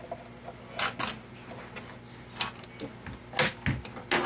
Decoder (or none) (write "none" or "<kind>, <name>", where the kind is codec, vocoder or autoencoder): none